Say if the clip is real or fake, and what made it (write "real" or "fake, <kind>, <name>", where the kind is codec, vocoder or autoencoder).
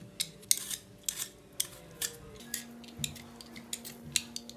real